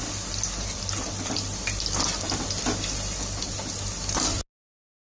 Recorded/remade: recorded